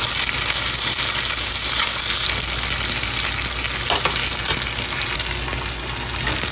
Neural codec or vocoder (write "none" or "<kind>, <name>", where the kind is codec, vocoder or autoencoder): none